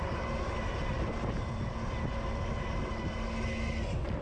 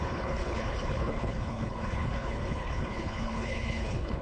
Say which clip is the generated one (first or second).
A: second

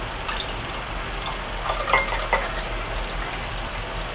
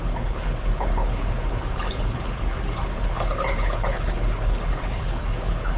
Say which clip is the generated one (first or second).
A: second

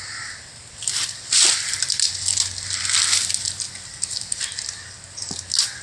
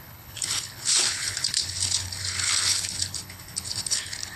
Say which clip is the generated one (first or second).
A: second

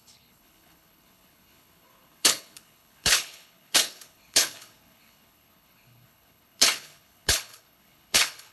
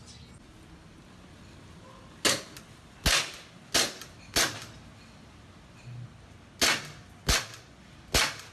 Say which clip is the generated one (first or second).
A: first